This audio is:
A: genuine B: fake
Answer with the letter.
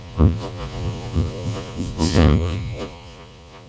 B